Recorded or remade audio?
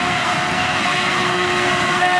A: remade